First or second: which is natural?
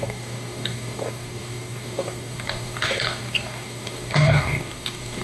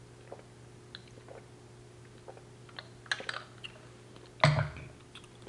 second